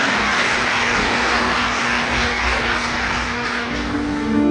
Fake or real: fake